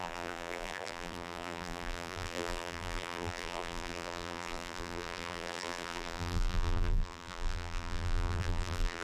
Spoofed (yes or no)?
yes